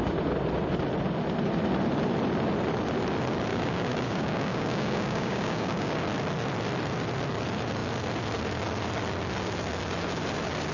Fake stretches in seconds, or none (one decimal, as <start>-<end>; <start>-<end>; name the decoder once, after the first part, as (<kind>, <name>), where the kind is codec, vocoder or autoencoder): 3.5-5.9 (codec, DAC)